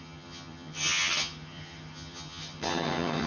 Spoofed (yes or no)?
yes